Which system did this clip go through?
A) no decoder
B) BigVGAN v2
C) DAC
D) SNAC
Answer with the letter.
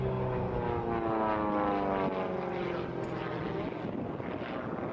A